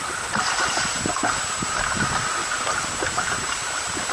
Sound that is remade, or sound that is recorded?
recorded